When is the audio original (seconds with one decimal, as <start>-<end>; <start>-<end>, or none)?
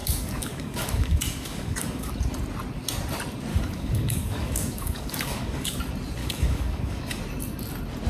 2.1-3.5; 5.8-6.2; 7.2-8.1